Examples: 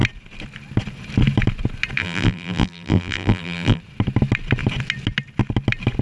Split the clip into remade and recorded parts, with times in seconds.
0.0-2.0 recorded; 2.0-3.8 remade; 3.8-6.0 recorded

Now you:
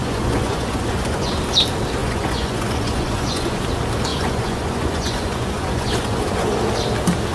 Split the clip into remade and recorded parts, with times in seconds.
0.0-1.4 remade; 1.4-2.0 recorded; 2.0-3.6 remade; 3.6-4.1 recorded; 4.1-6.6 remade; 6.6-7.3 recorded

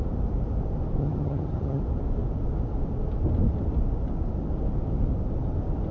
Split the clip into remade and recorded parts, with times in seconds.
0.0-1.0 recorded; 1.0-1.8 remade; 1.8-5.9 recorded

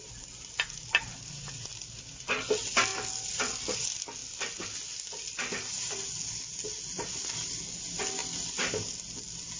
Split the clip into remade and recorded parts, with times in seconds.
0.0-9.6 recorded

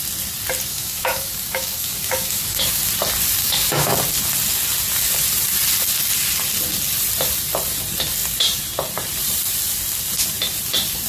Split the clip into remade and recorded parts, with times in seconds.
0.0-0.7 recorded; 0.7-2.8 remade; 2.8-3.4 recorded; 3.4-4.0 remade; 4.0-11.1 recorded

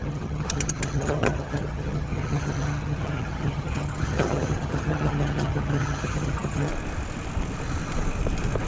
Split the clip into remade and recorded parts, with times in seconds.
0.0-6.7 remade; 6.7-8.7 recorded

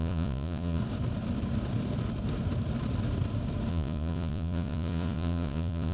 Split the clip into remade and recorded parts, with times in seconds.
0.0-0.8 remade; 0.8-3.7 recorded; 3.7-5.9 remade